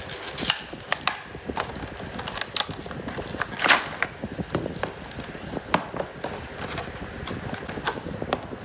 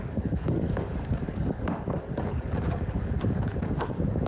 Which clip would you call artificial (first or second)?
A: second